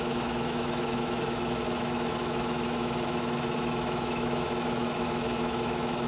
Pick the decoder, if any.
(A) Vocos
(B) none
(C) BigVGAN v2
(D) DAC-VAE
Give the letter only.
D